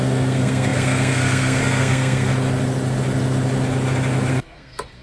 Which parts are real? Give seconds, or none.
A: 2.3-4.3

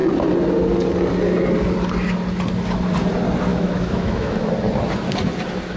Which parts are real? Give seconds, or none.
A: 0.0-3.5; 4.5-5.8

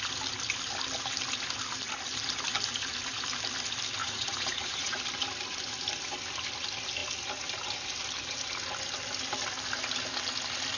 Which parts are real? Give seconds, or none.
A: 0.0-4.0; 5.0-10.8

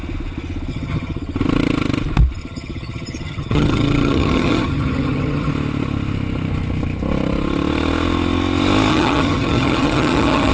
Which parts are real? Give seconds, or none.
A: 0.0-0.7; 1.2-2.4; 5.5-8.9